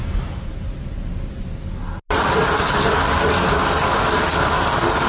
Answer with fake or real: real